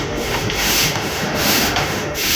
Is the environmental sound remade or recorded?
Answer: remade